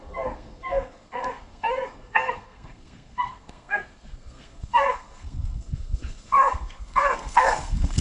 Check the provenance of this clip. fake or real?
fake